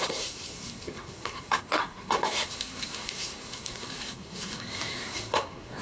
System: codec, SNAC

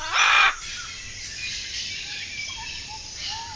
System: none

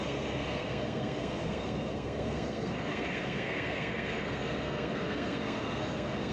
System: codec, SNAC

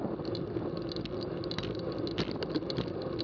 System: none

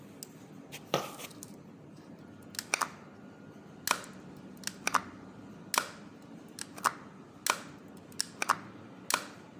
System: none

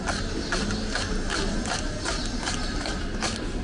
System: none